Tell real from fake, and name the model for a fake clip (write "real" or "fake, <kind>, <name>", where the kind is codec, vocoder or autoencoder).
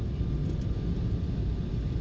real